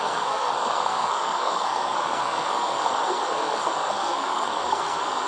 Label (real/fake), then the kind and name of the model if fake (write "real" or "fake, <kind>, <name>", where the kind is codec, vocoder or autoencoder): fake, codec, SNAC